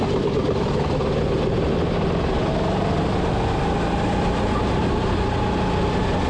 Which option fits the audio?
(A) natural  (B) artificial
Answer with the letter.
A